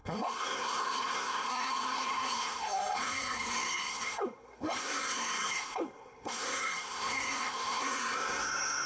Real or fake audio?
fake